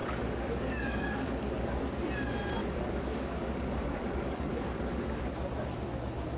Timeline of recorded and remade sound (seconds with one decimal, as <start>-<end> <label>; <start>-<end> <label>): 0.0-1.8 remade; 1.8-2.6 recorded; 2.6-5.2 remade; 5.2-6.4 recorded